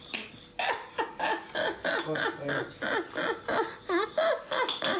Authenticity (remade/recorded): recorded